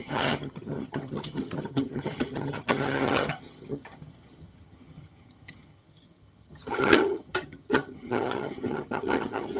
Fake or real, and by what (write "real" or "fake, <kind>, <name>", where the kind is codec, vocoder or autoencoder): fake, vocoder, HiFi-GAN